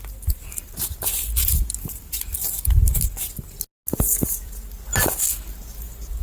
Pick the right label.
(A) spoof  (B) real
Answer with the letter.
B